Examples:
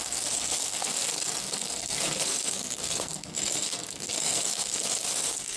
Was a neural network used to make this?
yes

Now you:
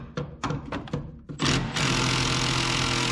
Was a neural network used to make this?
no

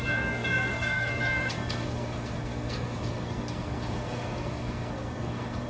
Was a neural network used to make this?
yes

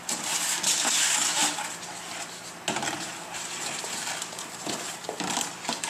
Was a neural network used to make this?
no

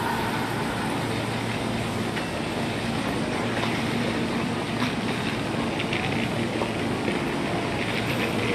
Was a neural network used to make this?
no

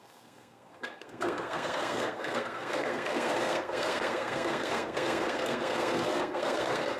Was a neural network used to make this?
yes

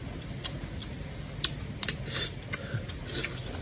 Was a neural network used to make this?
no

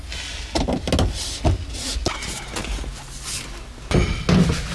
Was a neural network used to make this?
no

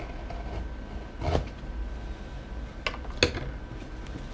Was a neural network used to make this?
no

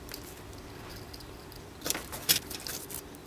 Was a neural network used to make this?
no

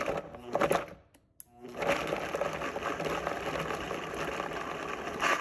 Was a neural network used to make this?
no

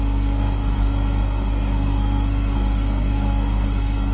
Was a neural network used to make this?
yes